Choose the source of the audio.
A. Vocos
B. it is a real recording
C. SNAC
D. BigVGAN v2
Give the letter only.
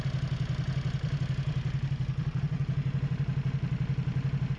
B